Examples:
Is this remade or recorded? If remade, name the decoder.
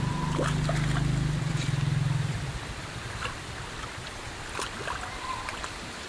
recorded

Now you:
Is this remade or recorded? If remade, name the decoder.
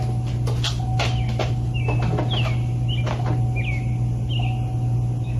recorded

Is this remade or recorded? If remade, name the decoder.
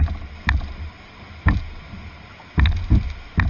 recorded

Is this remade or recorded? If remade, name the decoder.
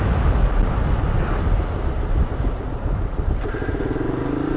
recorded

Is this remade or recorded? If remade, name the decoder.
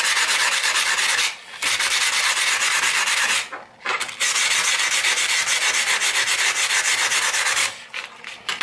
recorded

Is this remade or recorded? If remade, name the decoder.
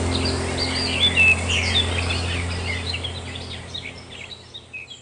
recorded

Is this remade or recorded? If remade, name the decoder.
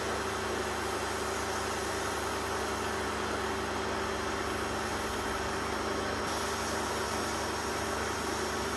recorded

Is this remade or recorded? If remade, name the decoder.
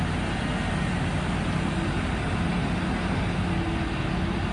recorded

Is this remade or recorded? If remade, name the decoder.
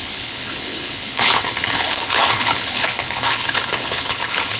remade, codec, HILCodec